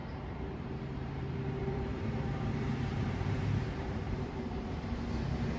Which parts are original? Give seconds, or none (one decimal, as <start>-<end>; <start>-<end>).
1.2-1.6; 5.0-5.6